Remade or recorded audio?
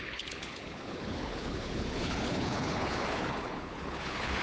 remade